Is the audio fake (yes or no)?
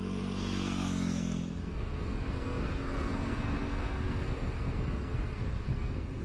yes